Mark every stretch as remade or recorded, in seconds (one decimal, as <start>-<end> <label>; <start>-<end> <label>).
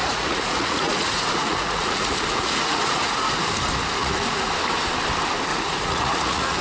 0.0-3.4 remade; 3.4-4.0 recorded; 4.0-4.5 remade; 4.5-5.5 recorded; 5.5-6.6 remade